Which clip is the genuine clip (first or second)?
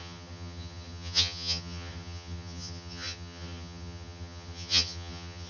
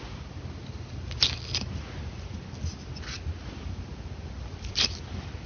second